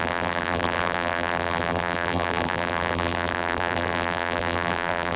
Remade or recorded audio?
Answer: remade